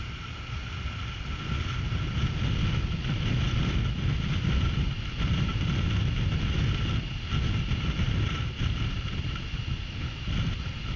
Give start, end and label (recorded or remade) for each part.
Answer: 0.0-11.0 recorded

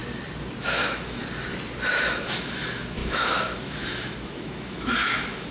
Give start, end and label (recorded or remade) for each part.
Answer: 0.0-0.6 recorded; 0.6-1.2 remade; 1.2-1.9 recorded; 1.9-5.5 remade

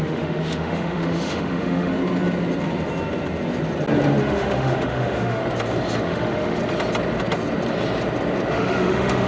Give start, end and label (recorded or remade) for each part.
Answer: 0.0-1.9 remade; 1.9-4.2 recorded; 4.2-5.4 remade; 5.4-6.0 recorded; 6.0-6.6 remade; 6.6-8.5 recorded; 8.5-9.3 remade